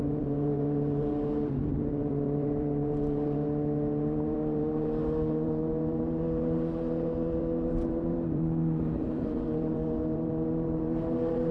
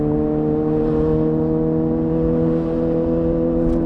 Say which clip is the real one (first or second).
second